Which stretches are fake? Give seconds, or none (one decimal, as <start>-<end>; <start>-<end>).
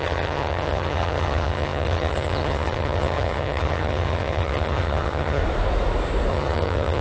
0.0-5.4; 6.3-7.0